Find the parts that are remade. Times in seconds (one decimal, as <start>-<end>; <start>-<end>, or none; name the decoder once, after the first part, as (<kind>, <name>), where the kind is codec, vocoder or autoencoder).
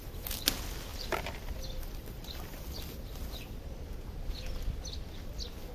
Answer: 0.9-4.3 (vocoder, BigVGAN v2)